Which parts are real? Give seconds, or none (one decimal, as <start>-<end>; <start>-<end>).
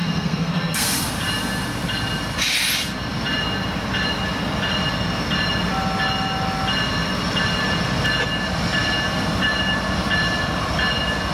1.1-11.3